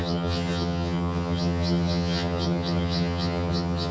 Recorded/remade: remade